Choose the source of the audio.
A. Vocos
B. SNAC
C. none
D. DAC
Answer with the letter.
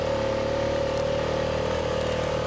C